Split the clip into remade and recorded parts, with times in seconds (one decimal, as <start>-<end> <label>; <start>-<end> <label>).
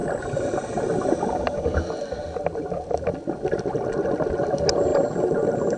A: 0.0-5.8 recorded